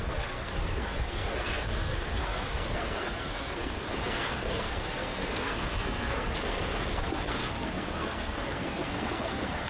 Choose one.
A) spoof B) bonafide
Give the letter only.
A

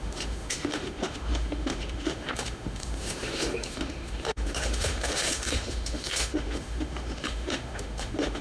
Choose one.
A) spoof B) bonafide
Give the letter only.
A